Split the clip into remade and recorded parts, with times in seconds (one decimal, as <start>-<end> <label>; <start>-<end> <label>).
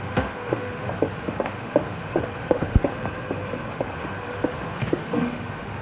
0.0-2.9 remade; 2.9-3.7 recorded; 3.7-5.8 remade